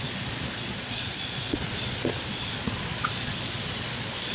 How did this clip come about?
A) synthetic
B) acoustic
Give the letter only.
A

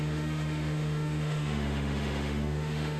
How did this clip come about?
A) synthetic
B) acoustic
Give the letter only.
A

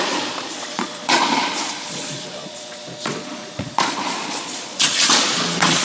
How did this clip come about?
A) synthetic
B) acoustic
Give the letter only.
A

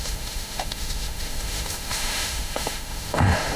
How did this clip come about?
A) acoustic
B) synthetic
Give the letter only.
B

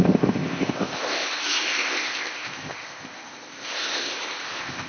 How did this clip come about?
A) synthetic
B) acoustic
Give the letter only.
A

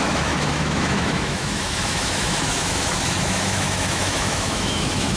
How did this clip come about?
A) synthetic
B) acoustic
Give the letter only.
A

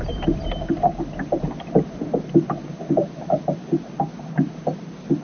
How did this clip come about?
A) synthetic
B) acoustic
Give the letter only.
B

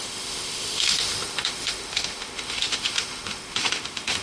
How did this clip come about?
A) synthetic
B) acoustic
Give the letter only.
A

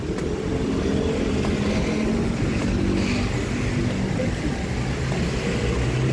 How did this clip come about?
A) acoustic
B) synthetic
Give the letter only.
A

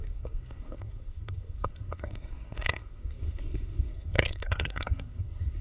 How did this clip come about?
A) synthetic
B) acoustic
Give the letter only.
A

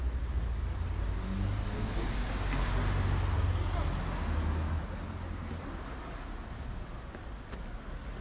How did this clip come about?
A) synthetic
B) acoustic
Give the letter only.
B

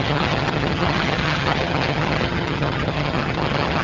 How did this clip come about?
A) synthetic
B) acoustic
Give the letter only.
A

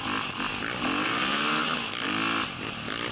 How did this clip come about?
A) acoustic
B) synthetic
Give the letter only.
A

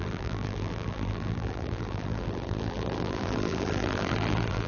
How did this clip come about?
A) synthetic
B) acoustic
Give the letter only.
A